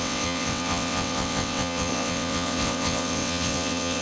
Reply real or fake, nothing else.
fake